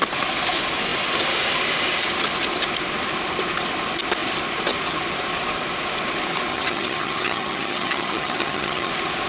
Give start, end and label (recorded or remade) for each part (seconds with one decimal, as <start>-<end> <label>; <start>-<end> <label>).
0.0-6.5 recorded; 6.5-8.9 remade; 8.9-9.3 recorded